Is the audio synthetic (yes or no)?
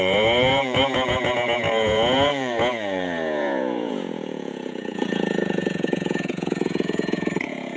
yes